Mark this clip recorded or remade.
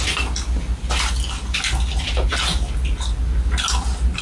recorded